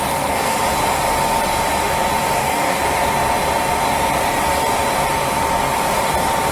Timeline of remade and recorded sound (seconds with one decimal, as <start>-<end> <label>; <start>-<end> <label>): 0.0-0.6 remade; 0.6-2.4 recorded; 2.4-2.8 remade; 2.8-6.5 recorded